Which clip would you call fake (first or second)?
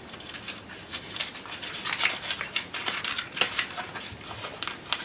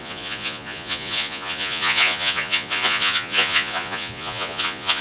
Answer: second